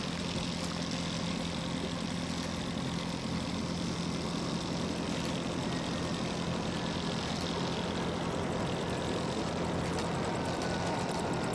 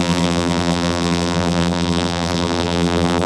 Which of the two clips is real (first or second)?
first